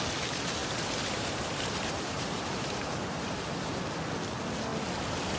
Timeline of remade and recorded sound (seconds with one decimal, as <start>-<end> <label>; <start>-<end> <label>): 0.0-0.6 recorded; 0.6-3.8 remade; 3.8-5.4 recorded